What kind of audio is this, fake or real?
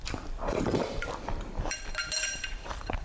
fake